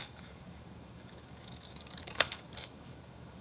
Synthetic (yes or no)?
yes